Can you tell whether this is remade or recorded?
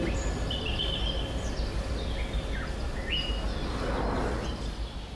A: recorded